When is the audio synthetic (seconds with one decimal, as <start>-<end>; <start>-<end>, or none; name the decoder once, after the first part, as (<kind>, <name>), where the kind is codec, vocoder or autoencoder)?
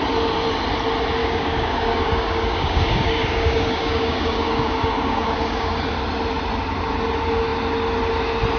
1.2-5.9 (codec, DAC)